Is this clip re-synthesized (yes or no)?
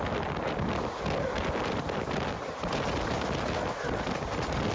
no